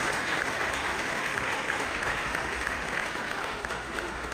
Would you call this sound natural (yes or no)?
no